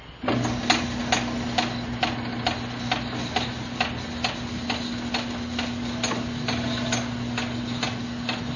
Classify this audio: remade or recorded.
recorded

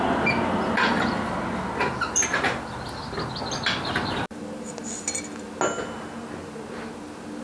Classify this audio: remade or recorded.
recorded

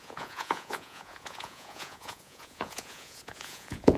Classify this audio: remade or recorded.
remade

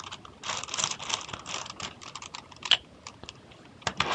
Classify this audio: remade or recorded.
recorded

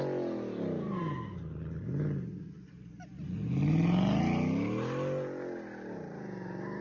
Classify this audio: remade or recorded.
recorded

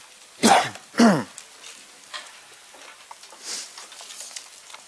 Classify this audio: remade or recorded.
recorded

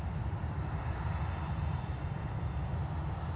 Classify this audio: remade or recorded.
recorded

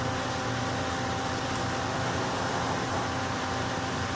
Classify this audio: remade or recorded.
recorded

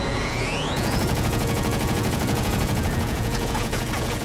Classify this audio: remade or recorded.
remade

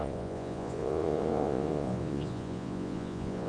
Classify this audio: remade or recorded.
remade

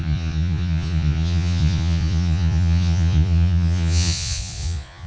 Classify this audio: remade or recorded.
remade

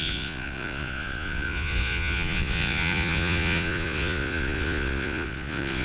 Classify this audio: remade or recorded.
remade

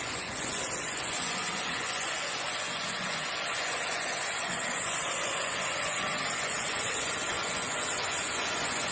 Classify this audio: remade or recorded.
remade